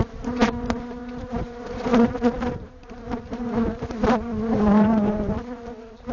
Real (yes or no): no